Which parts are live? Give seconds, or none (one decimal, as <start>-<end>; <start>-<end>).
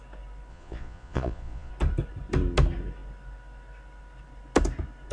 0.0-0.5; 1.7-5.1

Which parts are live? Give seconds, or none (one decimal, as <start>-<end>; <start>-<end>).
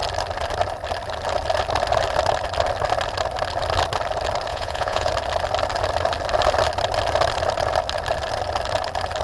0.0-4.5; 5.1-9.2